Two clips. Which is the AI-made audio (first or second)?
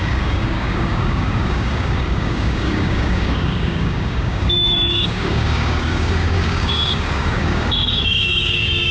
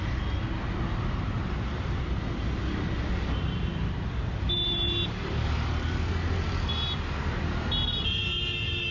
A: first